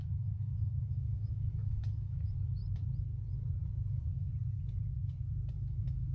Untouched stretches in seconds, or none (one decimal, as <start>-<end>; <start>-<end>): 2.6-3.9; 4.3-5.5